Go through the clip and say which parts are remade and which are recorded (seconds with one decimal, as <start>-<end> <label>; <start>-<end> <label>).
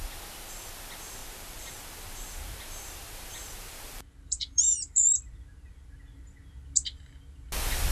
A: 0.0-1.2 recorded; 1.2-5.9 remade; 5.9-7.9 recorded